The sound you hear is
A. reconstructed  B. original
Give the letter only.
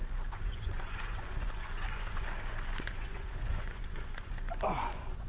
A